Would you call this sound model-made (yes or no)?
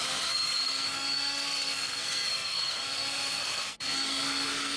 yes